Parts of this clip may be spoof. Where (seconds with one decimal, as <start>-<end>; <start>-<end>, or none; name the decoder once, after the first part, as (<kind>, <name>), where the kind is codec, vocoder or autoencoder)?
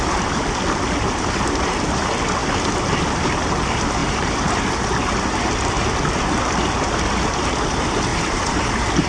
4.0-4.7 (vocoder, BigVGAN v2); 8.1-8.7